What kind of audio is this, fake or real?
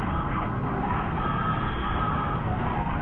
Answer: fake